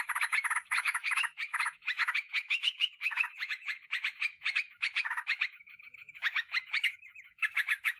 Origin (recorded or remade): remade